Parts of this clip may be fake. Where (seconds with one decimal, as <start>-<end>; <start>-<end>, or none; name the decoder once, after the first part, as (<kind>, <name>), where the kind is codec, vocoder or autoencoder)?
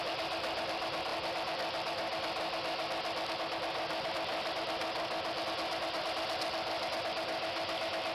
none